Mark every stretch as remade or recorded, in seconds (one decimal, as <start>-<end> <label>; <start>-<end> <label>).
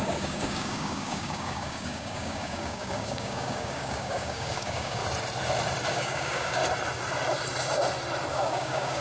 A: 0.0-5.0 remade; 5.0-5.9 recorded; 5.9-6.6 remade; 6.6-8.3 recorded; 8.3-9.0 remade